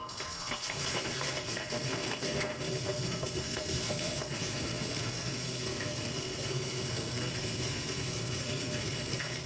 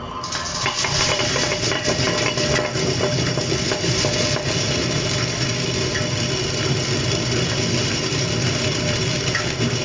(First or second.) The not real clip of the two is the first